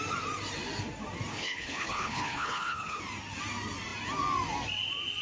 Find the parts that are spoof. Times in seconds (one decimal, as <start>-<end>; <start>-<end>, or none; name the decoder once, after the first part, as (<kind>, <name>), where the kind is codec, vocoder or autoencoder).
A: 1.3-3.0 (codec, HILCodec)